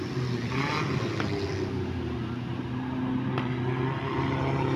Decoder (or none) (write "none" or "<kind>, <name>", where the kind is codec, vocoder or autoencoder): none